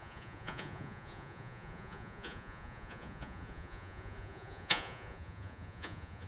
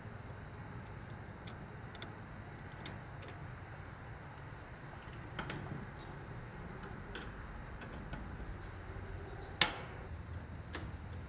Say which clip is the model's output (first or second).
first